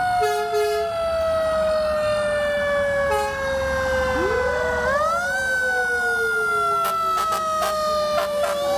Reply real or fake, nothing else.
real